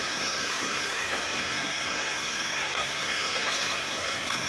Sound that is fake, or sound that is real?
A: fake